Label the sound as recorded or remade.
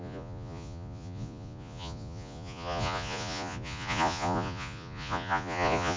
remade